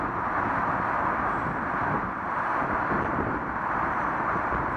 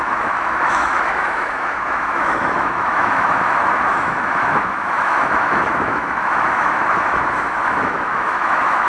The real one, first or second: first